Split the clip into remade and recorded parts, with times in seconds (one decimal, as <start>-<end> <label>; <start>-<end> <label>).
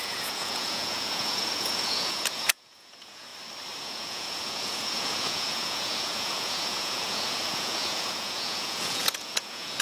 0.0-3.3 remade; 3.3-3.8 recorded; 3.8-9.8 remade